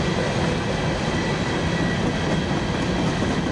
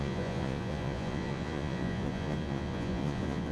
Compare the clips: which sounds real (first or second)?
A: first